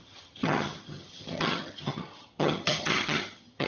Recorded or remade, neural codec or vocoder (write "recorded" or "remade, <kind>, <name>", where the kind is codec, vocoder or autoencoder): remade, vocoder, HiFi-GAN